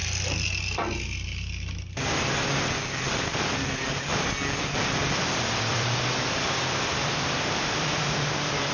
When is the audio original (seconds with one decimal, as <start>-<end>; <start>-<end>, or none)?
0.0-5.7